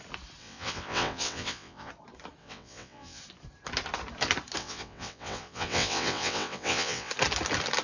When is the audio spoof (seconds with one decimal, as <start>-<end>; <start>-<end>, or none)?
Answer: 0.4-1.9; 2.4-3.2; 4.6-7.1